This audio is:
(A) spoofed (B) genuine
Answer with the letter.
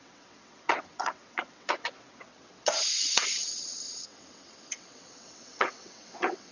A